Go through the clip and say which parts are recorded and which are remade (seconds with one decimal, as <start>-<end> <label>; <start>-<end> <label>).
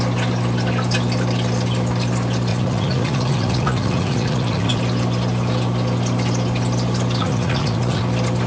0.0-2.5 recorded; 2.5-4.8 remade; 4.8-7.2 recorded; 7.2-8.0 remade; 8.0-8.5 recorded